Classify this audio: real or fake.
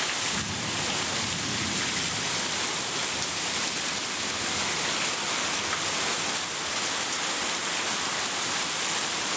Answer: real